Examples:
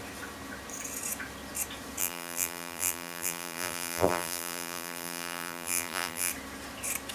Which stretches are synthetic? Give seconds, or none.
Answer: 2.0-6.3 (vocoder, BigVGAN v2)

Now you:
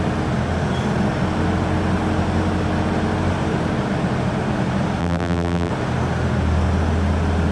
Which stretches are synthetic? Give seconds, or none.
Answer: 5.0-5.7 (vocoder, BigVGAN v2)